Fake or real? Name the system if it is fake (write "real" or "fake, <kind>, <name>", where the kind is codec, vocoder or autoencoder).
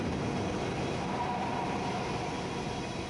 real